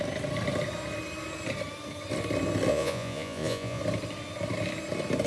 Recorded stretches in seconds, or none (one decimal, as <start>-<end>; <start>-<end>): 0.0-2.7; 3.8-5.3